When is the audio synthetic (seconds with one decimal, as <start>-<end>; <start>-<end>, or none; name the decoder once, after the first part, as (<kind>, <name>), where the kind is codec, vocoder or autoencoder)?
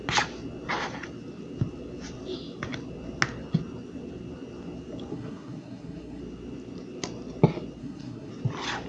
5.1-6.2 (codec, SNAC); 7.8-8.3